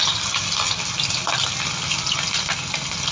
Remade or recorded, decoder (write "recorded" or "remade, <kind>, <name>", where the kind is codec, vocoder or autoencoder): recorded